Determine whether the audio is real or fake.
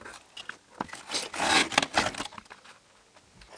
real